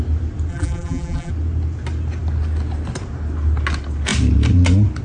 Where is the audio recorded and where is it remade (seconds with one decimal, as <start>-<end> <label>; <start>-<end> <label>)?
0.0-0.5 recorded; 0.5-1.3 remade; 1.3-5.0 recorded